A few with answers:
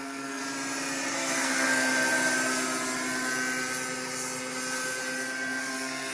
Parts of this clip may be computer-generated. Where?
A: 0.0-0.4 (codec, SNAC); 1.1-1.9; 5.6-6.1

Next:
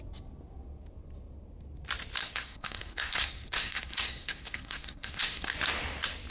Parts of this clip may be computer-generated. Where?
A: 2.2-5.4 (codec, SNAC)

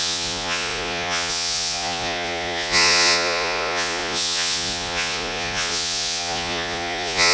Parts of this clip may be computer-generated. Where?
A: 0.0-7.3 (vocoder, Vocos)

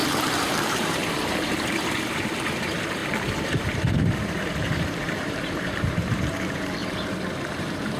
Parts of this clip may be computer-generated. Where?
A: 0.0-6.8 (vocoder, BigVGAN v2); 7.5-8.0

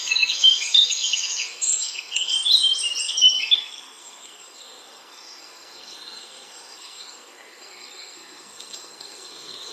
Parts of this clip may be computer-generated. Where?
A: 0.0-2.4 (codec, SNAC); 3.0-9.7

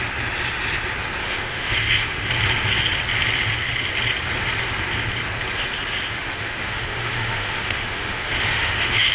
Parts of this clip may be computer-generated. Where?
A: 1.2-2.3 (autoencoder, DAC-VAE); 6.1-9.1

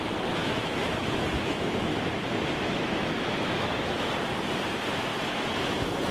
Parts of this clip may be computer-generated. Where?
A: 0.4-4.1 (autoencoder, DAC-VAE); 5.1-6.1